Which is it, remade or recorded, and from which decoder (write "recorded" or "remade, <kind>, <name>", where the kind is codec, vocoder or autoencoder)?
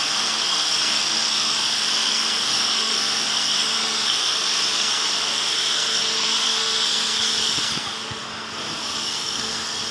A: remade, codec, SNAC